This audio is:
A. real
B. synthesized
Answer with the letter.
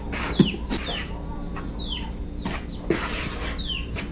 B